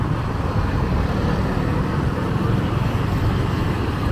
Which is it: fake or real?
real